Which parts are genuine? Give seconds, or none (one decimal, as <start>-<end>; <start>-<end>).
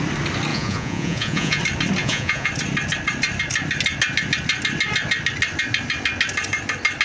0.0-0.5; 1.6-2.0; 2.5-7.0